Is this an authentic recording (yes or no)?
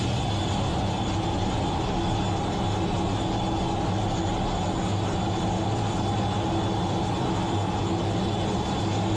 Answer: yes